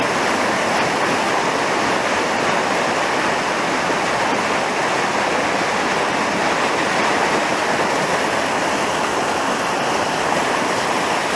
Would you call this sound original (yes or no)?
yes